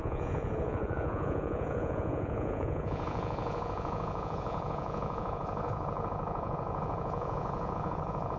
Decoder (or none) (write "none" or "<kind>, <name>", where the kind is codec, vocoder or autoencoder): vocoder, Vocos